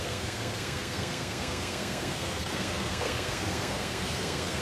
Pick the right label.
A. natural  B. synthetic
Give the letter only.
B